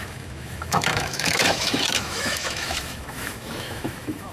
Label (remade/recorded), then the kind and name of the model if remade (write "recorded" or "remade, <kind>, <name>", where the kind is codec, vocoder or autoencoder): remade, autoencoder, DAC-VAE